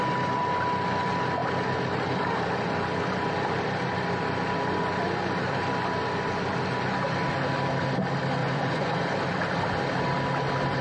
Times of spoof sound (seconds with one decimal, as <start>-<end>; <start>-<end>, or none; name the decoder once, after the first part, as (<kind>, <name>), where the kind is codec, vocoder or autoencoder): 8.4-9.0 (vocoder, Vocos)